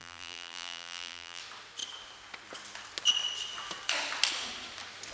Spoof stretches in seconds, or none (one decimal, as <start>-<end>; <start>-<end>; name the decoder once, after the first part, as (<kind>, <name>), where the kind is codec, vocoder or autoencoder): 0.0-1.4 (vocoder, BigVGAN v2)

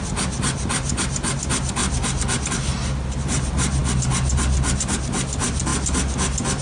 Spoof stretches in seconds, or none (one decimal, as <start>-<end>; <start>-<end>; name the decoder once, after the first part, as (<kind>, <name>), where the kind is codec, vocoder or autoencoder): none

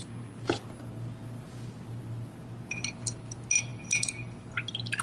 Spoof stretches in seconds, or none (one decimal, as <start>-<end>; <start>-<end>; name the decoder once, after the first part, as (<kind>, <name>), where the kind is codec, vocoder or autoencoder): none

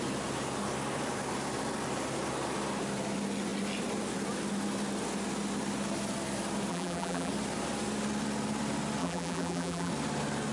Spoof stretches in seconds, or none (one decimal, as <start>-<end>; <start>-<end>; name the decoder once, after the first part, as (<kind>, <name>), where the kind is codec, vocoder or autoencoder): 6.7-7.3 (vocoder, BigVGAN v2); 9.0-9.9